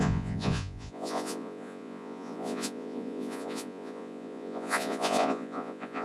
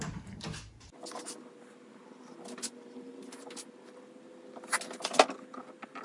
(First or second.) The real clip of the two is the second